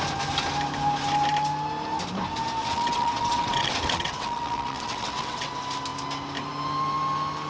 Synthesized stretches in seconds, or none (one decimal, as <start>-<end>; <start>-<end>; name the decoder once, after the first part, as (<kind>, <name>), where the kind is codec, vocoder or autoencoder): 2.6-5.5 (vocoder, WaveNeXt)